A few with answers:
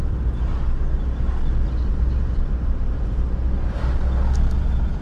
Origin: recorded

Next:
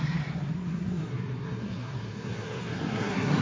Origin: remade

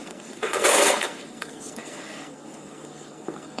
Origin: remade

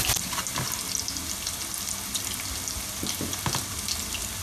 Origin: recorded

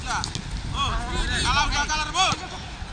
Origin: recorded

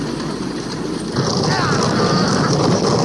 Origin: recorded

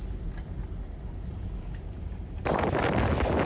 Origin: recorded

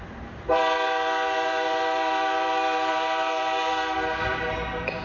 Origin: remade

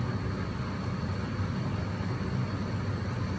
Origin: recorded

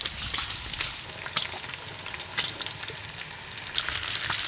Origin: recorded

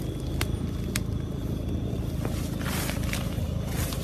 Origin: recorded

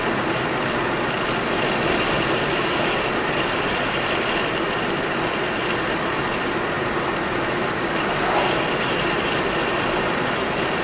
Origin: recorded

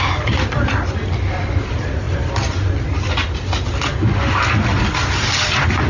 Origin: recorded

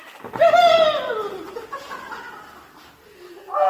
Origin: recorded